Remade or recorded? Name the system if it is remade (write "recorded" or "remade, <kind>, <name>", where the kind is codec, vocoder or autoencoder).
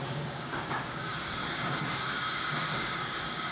remade, codec, DAC